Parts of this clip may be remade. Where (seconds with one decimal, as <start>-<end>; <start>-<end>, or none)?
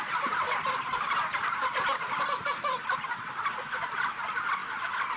none